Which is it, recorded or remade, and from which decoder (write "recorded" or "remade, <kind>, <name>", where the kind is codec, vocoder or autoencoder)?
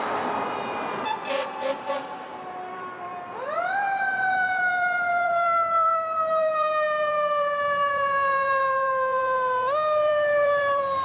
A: remade, vocoder, BigVGAN v2